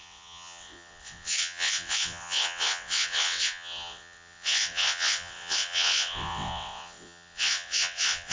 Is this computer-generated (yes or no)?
yes